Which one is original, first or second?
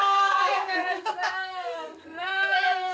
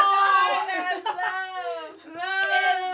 second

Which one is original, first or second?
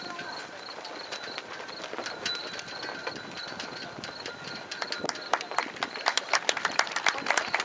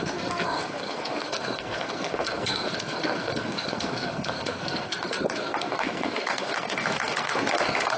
first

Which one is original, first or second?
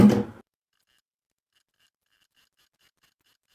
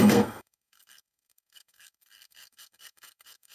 first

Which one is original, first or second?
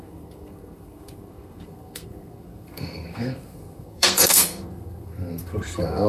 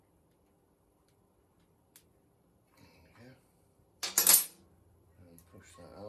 second